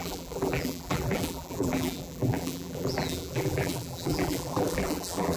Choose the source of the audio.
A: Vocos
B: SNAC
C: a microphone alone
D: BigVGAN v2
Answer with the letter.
D